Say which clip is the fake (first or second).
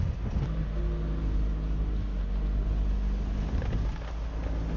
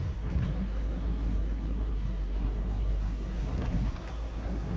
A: second